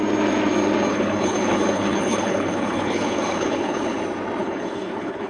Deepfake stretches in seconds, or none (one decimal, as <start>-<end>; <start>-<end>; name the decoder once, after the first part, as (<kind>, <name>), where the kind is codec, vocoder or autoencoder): 0.9-4.0 (codec, HILCodec); 4.4-5.3